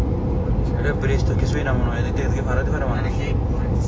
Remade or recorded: recorded